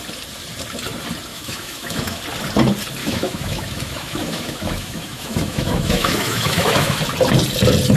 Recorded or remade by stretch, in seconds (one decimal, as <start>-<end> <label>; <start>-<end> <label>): 0.0-1.3 recorded; 1.3-2.2 remade; 2.2-3.0 recorded; 3.0-7.0 remade; 7.0-8.0 recorded

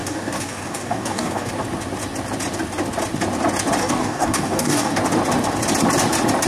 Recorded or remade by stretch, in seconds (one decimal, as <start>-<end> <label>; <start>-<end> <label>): 0.0-1.5 remade; 1.5-3.8 recorded; 3.8-5.0 remade; 5.0-6.5 recorded

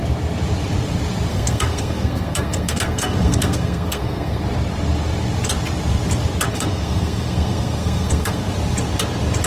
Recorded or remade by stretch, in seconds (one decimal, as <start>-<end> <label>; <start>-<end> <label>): 0.0-1.3 recorded; 1.3-4.4 remade; 4.4-6.5 recorded; 6.5-8.5 remade; 8.5-9.5 recorded

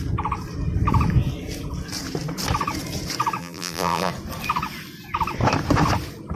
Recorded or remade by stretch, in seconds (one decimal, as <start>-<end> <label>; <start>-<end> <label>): 0.0-3.4 recorded; 3.4-4.1 remade; 4.1-6.4 recorded